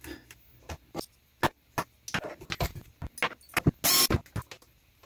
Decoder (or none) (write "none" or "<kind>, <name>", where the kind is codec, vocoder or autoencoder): none